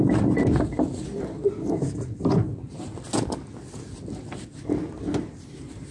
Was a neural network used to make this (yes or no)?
no